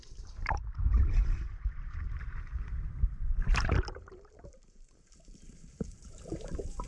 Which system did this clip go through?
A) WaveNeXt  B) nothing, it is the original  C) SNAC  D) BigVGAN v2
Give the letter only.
D